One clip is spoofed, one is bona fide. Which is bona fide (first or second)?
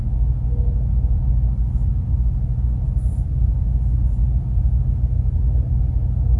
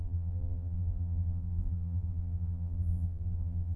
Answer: first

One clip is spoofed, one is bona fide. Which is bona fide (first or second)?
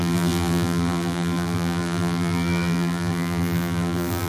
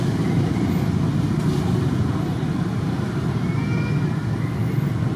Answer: second